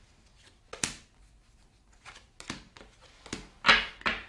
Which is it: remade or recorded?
recorded